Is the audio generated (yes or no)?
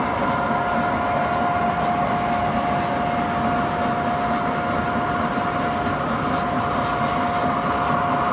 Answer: no